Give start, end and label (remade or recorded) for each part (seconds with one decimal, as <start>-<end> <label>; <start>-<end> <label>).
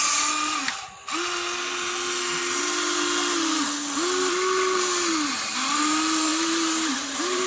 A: 0.0-6.3 recorded; 6.3-7.5 remade